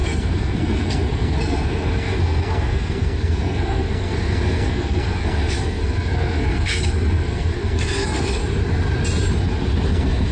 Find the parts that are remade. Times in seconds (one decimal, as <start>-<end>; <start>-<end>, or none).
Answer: 0.0-8.4; 9.9-10.3